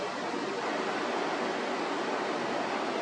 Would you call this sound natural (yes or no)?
yes